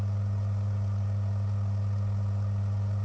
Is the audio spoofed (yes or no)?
no